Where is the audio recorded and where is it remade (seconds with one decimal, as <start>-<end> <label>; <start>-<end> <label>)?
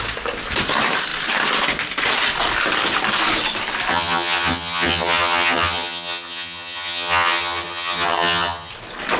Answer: 0.0-3.9 recorded; 3.9-8.7 remade; 8.7-9.2 recorded